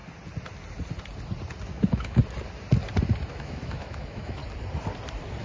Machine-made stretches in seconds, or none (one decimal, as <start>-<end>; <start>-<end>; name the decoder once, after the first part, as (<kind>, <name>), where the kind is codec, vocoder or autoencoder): 1.7-2.2 (autoencoder, DAC-VAE); 3.3-4.4